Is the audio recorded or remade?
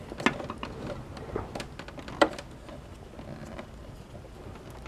recorded